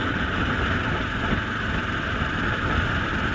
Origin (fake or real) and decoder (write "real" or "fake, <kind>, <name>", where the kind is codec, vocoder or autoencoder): real